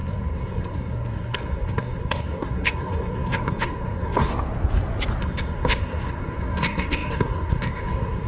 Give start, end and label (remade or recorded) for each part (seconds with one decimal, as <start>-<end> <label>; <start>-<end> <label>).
0.0-4.3 remade; 4.3-5.2 recorded; 5.2-8.3 remade